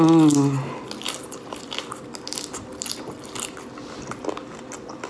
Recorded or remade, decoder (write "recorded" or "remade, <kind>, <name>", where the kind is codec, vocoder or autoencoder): recorded